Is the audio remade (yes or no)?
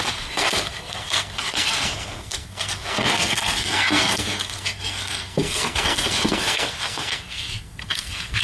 yes